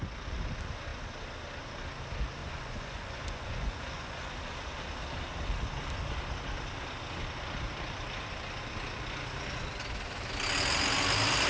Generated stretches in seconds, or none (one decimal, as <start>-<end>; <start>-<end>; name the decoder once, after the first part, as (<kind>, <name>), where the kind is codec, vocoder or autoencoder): 2.4-4.3 (vocoder, Vocos)